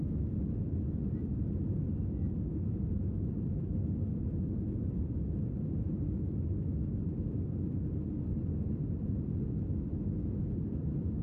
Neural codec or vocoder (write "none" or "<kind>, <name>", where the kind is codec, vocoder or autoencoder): none